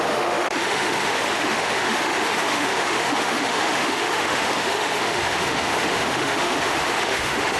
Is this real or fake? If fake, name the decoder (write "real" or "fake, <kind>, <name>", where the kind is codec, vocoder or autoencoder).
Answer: fake, autoencoder, DAC-VAE